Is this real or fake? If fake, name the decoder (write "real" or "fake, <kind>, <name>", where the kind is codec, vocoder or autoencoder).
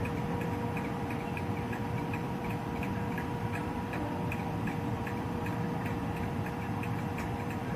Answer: fake, vocoder, BigVGAN v2